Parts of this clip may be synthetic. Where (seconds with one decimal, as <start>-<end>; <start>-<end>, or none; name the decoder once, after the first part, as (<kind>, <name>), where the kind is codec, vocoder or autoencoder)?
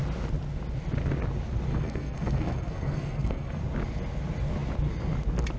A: 1.7-3.6 (codec, SNAC)